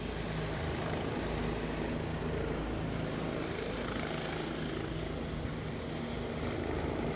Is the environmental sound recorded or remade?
recorded